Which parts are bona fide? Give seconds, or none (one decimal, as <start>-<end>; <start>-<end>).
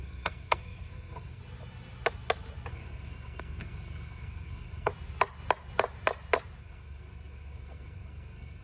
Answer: 1.4-2.7; 4.9-6.6